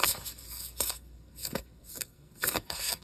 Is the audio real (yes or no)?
no